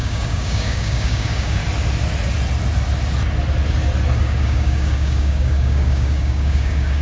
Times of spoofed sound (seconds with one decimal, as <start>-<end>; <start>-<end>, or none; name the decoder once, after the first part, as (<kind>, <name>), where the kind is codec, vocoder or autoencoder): 0.0-1.6 (codec, DAC); 4.2-7.0